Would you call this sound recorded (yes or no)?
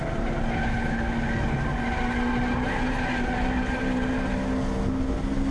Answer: yes